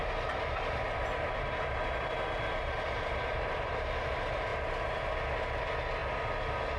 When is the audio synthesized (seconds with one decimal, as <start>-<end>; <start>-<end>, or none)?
0.0-4.1; 4.5-5.0